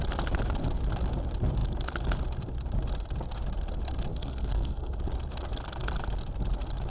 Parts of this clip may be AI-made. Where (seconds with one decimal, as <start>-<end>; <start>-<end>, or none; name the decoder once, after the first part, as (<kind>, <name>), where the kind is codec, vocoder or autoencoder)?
4.1-5.0 (codec, SNAC)